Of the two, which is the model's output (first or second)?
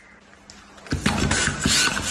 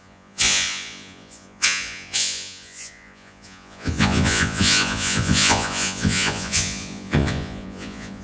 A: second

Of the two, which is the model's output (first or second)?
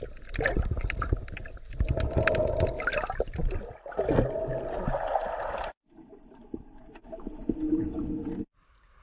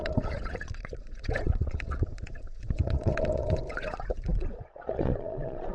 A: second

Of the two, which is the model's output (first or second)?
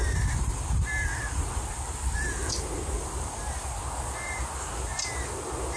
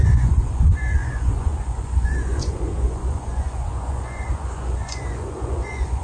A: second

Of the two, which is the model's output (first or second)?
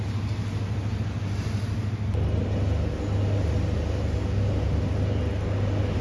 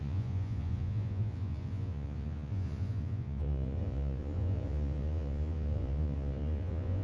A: second